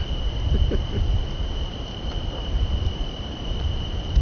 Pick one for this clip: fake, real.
real